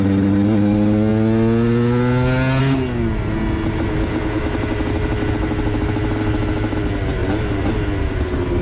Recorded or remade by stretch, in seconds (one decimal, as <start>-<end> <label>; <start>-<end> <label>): 0.0-7.2 recorded; 7.2-7.7 remade; 7.7-8.6 recorded